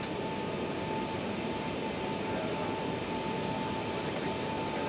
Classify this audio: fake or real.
real